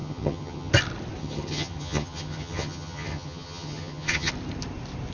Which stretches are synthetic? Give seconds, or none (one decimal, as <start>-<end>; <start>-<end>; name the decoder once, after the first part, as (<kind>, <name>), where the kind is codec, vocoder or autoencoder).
0.0-0.7 (vocoder, HiFi-GAN); 1.2-4.3